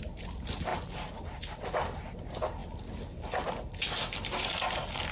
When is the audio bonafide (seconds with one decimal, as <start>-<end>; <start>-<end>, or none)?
0.0-5.1